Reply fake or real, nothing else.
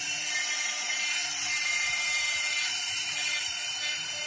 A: fake